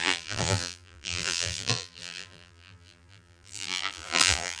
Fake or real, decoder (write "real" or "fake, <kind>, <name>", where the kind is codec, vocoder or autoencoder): fake, vocoder, BigVGAN v2